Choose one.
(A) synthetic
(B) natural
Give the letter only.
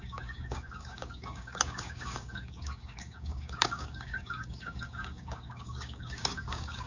A